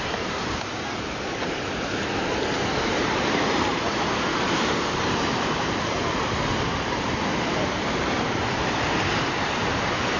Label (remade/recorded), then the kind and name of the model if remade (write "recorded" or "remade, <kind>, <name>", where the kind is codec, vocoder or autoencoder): remade, vocoder, BigVGAN v2